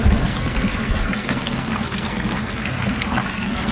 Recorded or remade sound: remade